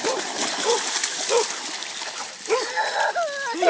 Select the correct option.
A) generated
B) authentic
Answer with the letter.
B